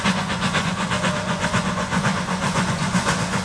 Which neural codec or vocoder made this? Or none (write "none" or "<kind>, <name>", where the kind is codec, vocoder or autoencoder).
vocoder, Vocos